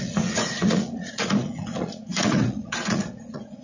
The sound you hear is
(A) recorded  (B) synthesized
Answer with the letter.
B